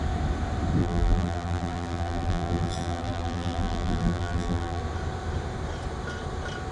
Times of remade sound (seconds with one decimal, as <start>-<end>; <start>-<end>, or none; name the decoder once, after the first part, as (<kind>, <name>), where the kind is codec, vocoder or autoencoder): 0.8-4.8 (vocoder, BigVGAN v2)